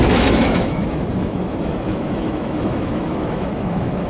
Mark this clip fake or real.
fake